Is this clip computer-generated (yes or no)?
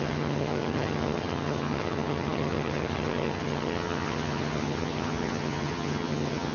yes